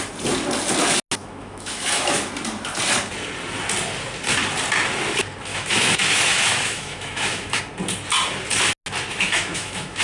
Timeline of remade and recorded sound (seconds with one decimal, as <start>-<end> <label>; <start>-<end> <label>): 0.0-1.2 recorded; 1.2-2.3 remade; 2.3-5.5 recorded; 5.5-7.6 remade; 7.6-9.1 recorded; 9.1-10.0 remade